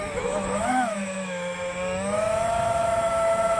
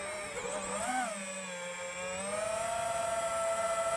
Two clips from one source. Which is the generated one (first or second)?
first